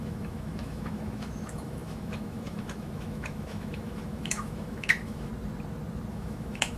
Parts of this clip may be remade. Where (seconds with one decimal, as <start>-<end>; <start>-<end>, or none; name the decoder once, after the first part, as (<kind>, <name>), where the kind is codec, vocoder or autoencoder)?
0.0-5.3 (autoencoder, DAC-VAE); 6.1-6.8